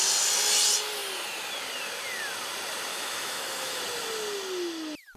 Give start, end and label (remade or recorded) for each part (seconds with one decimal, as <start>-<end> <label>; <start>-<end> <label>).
0.0-2.9 recorded; 2.9-3.8 remade; 3.8-5.2 recorded